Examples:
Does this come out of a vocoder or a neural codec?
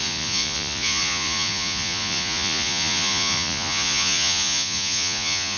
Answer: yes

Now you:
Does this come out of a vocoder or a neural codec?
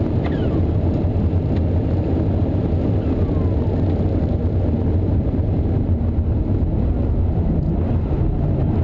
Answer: no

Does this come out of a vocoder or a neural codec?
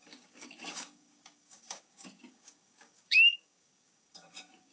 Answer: yes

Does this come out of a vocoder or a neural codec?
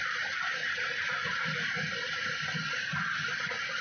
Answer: no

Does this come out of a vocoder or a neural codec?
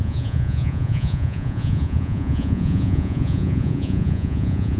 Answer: yes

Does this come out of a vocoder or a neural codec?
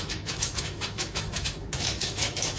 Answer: yes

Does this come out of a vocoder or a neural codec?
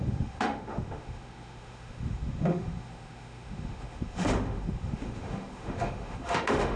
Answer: yes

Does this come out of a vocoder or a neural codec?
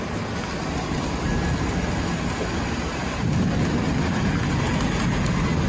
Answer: no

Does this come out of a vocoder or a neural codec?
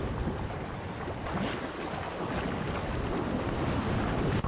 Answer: no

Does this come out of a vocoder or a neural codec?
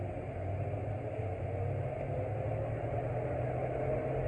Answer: no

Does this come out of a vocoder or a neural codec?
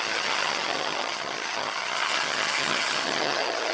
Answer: yes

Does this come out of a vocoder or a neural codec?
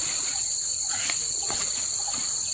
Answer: yes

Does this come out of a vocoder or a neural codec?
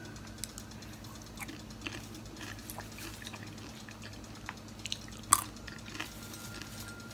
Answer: no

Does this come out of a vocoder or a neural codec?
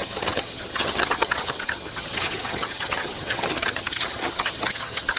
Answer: yes